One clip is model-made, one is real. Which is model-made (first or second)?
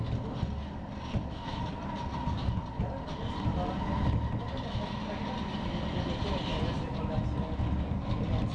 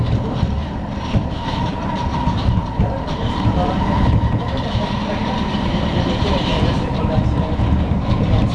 second